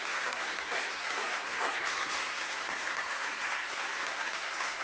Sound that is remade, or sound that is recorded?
remade